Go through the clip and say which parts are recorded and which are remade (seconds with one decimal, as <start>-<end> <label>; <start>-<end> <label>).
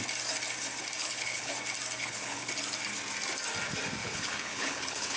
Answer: 0.0-1.0 recorded; 1.0-1.5 remade; 1.5-2.0 recorded; 2.0-2.5 remade; 2.5-4.0 recorded; 4.0-5.2 remade